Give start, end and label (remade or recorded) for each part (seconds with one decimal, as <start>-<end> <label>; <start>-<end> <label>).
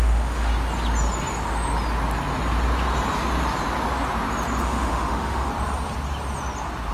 0.0-0.5 remade; 0.5-4.6 recorded; 4.6-5.5 remade; 5.5-6.9 recorded